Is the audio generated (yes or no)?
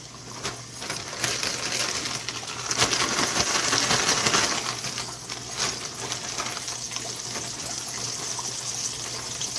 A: no